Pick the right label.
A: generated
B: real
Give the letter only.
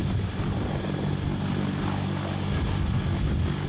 B